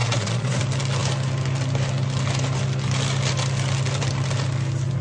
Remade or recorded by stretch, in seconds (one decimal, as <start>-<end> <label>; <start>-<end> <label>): 0.0-0.6 remade; 0.6-5.0 recorded